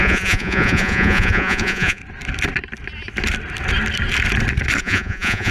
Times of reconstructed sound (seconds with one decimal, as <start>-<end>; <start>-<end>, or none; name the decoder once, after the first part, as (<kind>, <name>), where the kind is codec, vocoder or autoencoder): 0.0-2.0 (vocoder, Vocos); 4.8-5.5